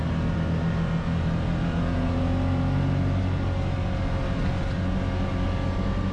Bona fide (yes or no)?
yes